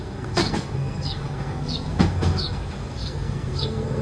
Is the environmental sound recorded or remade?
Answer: remade